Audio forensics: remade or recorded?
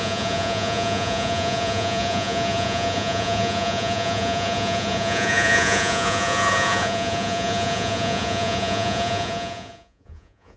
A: remade